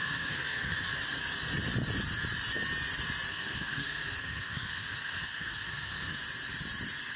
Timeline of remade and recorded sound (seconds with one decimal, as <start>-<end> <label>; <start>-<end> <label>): 0.0-0.7 remade; 0.7-3.3 recorded; 3.3-6.2 remade; 6.2-7.2 recorded